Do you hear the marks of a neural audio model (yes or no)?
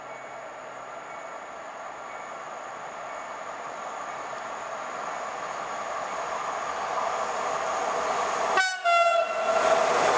no